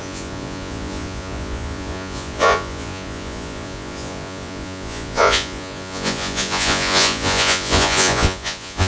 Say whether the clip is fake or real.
fake